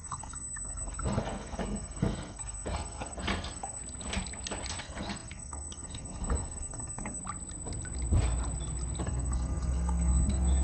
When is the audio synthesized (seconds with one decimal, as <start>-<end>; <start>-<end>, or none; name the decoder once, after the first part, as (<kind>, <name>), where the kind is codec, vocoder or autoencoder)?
0.0-3.8 (codec, SNAC); 4.8-7.2; 9.0-10.6

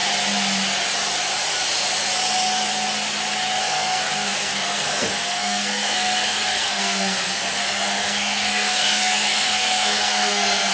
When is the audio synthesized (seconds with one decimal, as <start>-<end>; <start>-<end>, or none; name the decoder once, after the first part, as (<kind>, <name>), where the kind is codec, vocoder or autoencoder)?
3.6-10.7 (codec, SNAC)

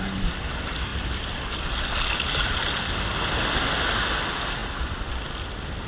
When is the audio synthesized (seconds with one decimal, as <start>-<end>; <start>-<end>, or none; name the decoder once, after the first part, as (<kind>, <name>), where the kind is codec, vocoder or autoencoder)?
none

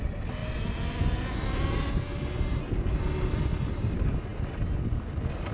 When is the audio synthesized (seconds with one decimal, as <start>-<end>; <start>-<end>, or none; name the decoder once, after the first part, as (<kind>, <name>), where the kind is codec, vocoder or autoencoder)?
none

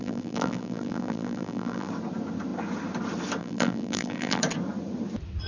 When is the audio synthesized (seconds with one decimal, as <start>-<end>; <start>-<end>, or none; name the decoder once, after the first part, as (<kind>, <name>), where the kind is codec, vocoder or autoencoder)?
0.0-1.9 (vocoder, BigVGAN v2); 3.4-4.4

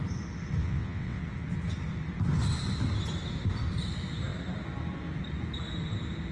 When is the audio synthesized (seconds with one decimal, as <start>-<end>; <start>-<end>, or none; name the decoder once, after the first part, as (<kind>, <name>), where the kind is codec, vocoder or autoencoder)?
0.6-1.2 (vocoder, WaveNeXt)